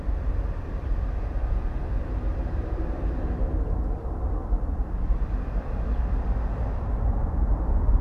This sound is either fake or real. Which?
fake